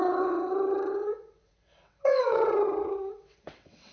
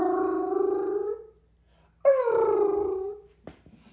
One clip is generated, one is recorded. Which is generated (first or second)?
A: first